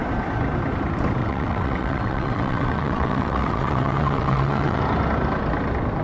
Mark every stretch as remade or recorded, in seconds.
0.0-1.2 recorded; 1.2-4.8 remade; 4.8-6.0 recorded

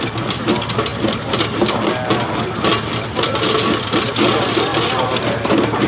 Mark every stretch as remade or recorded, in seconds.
0.0-5.9 recorded

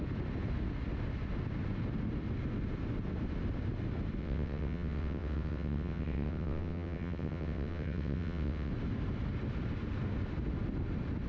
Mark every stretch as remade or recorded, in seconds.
0.0-4.2 recorded; 4.2-8.7 remade; 8.7-11.3 recorded

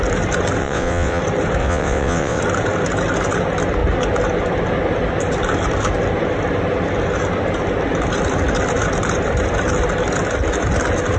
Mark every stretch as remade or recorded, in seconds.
0.0-0.6 recorded; 0.6-1.2 remade; 1.2-1.6 recorded; 1.6-2.4 remade; 2.4-11.2 recorded

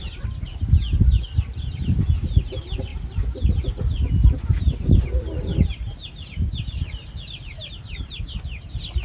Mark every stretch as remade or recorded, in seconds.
0.0-9.0 recorded